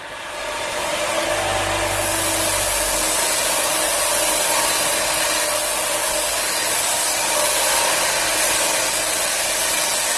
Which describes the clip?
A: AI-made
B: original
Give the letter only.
B